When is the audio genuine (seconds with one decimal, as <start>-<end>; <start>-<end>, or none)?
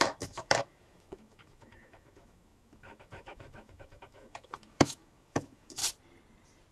5.8-6.7